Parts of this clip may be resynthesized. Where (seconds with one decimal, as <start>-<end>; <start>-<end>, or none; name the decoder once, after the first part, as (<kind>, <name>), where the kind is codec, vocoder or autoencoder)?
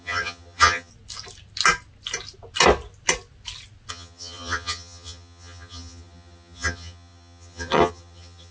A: 0.0-0.9 (vocoder, HiFi-GAN); 3.9-8.5